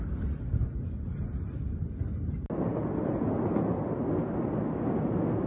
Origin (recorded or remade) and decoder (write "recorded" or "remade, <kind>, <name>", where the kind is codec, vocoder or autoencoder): recorded